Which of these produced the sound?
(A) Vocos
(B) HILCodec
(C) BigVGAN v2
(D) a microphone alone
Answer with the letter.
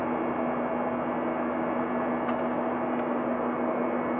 D